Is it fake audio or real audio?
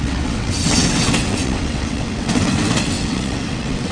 fake